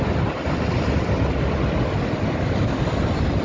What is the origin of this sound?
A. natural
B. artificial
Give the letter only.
A